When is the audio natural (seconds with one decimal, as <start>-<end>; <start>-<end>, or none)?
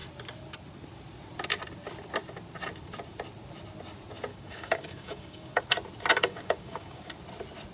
0.0-4.3; 5.6-6.1; 7.1-7.7